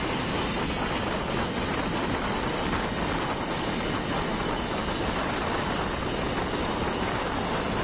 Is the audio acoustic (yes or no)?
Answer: yes